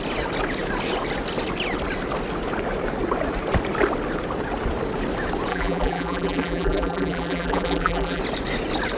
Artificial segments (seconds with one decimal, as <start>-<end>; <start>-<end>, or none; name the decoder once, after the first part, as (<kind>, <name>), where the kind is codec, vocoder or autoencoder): 5.5-8.2 (vocoder, BigVGAN v2)